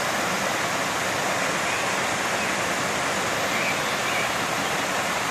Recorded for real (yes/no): yes